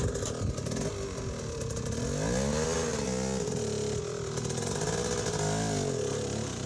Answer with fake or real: real